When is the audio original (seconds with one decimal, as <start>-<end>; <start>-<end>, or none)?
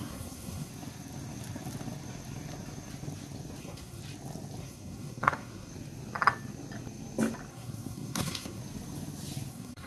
0.7-3.6; 4.0-4.6; 5.7-7.5; 8.6-9.5